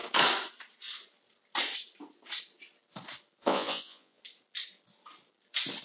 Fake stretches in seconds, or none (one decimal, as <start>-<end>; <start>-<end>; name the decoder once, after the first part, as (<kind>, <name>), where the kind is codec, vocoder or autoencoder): 3.4-4.2 (vocoder, Vocos)